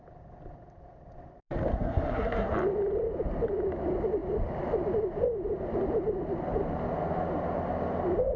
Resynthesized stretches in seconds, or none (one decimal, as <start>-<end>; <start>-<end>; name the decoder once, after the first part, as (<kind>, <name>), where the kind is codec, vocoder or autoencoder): 1.7-2.5 (codec, SNAC)